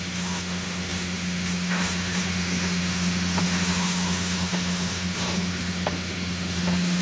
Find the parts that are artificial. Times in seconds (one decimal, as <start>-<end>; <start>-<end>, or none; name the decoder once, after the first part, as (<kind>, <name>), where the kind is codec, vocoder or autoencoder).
0.0-7.0 (autoencoder, DAC-VAE)